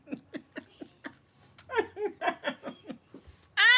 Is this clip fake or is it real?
real